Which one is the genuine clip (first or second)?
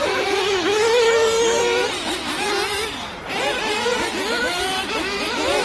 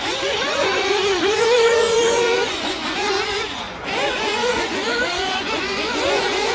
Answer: first